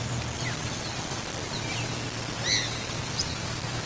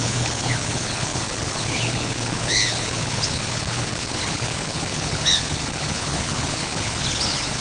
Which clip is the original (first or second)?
first